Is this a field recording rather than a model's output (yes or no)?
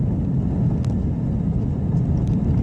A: yes